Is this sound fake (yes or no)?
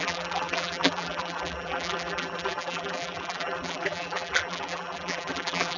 yes